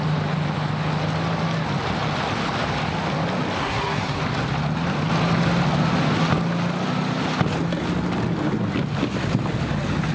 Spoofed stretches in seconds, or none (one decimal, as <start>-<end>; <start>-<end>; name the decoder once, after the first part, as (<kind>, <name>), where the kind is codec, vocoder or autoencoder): 3.6-4.2 (codec, SNAC)